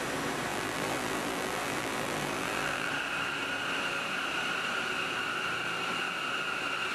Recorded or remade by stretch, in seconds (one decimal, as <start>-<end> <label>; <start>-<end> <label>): 0.0-0.5 recorded; 0.5-2.9 remade; 2.9-6.9 recorded